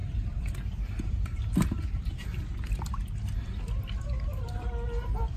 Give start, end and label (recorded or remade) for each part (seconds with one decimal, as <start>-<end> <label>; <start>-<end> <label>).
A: 0.0-1.0 recorded; 1.0-2.2 remade; 2.2-5.4 recorded

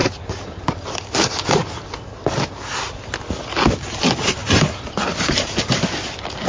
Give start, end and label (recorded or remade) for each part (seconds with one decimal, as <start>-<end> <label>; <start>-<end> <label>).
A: 0.0-4.4 recorded; 4.4-5.7 remade; 5.7-6.5 recorded

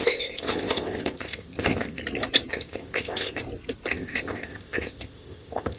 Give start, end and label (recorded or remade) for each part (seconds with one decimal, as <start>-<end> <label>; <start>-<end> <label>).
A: 0.0-2.0 remade; 2.0-2.5 recorded; 2.5-3.4 remade; 3.4-3.9 recorded; 3.9-5.8 remade

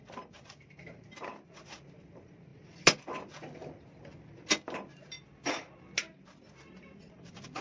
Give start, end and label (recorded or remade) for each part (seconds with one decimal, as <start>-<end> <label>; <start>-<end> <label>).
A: 0.0-2.5 recorded; 2.5-4.0 remade; 4.0-7.6 recorded

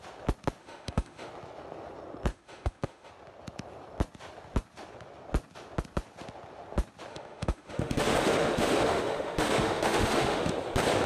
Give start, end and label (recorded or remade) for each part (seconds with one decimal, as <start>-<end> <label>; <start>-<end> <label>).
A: 0.0-0.6 recorded; 0.6-1.3 remade; 1.3-2.3 recorded; 2.3-3.1 remade; 3.1-7.1 recorded; 7.1-10.5 remade; 10.5-11.1 recorded